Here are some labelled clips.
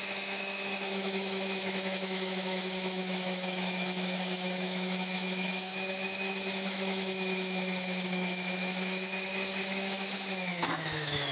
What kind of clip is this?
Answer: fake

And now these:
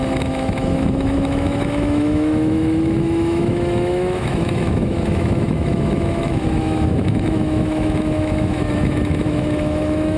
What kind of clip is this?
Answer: fake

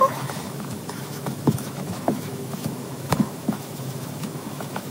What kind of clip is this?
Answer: fake